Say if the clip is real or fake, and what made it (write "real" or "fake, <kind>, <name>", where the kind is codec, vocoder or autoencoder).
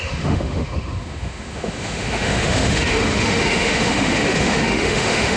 fake, autoencoder, DAC-VAE